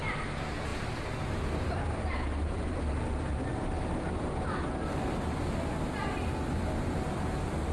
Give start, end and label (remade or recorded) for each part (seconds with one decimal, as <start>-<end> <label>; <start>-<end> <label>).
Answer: 0.0-7.7 recorded